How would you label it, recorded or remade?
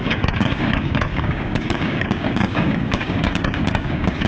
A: remade